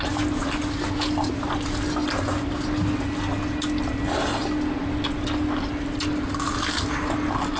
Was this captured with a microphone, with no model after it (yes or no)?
yes